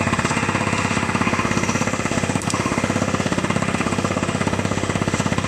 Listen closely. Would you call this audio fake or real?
fake